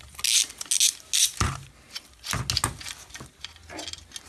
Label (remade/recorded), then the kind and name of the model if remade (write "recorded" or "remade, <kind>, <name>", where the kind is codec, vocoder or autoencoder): recorded